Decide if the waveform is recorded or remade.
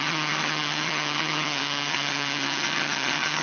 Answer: remade